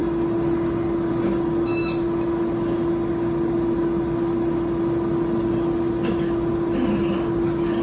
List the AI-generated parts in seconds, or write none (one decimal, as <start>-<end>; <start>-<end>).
none